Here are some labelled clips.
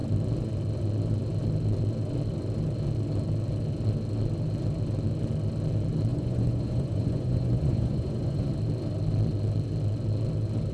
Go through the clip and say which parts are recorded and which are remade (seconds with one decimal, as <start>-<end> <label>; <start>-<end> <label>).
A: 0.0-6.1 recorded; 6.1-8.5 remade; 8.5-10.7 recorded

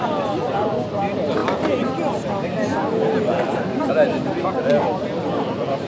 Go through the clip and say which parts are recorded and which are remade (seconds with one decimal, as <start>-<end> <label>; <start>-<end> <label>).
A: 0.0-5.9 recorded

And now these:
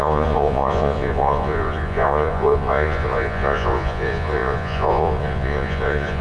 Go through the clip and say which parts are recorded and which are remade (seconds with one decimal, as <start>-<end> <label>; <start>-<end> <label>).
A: 0.0-6.2 remade

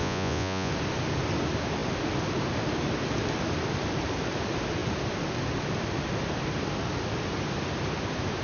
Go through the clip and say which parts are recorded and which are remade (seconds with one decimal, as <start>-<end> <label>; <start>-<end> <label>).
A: 0.0-0.7 remade; 0.7-8.4 recorded

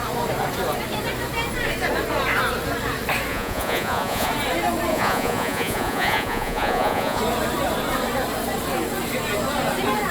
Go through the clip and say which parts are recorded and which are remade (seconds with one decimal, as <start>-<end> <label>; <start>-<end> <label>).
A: 0.0-3.3 recorded; 3.3-4.3 remade; 4.3-4.9 recorded; 4.9-7.2 remade; 7.2-10.1 recorded

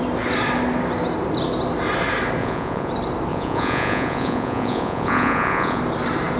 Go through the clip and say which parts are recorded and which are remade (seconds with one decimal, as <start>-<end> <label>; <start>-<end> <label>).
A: 0.0-2.4 recorded; 2.4-2.9 remade; 2.9-3.3 recorded; 3.3-5.8 remade; 5.8-6.4 recorded